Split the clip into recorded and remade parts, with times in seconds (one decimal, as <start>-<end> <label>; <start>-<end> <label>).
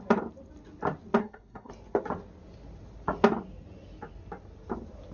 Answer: 0.0-1.2 recorded; 1.2-1.7 remade; 1.7-5.1 recorded